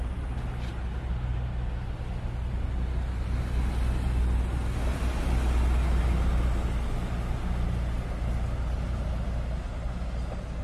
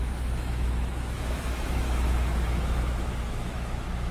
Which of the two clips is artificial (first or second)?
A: second